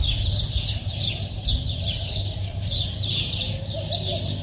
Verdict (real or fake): real